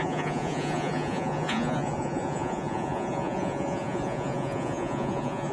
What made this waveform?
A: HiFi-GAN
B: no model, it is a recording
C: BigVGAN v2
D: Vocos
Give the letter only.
D